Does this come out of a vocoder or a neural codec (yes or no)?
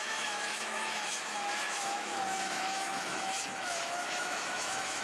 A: yes